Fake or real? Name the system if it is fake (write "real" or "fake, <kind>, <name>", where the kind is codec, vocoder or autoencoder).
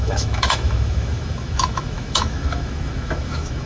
fake, autoencoder, DAC-VAE